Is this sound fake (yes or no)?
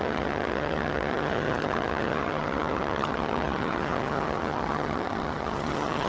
yes